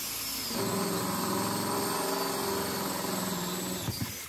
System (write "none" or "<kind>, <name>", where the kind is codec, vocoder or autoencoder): none